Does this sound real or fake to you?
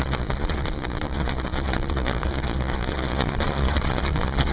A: fake